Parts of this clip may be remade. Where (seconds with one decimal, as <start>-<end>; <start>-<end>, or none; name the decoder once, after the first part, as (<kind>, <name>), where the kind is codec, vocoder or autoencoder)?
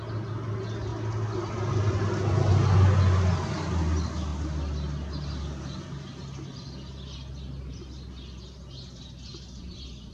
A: none